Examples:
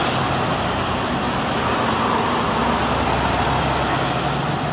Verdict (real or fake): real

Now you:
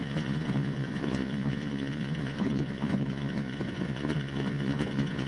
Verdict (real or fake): fake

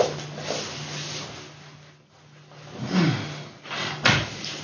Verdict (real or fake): real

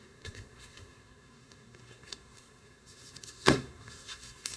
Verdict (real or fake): fake